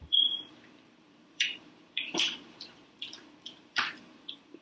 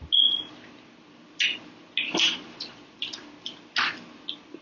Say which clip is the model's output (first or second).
first